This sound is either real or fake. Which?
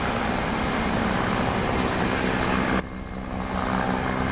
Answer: real